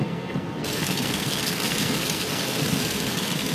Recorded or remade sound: remade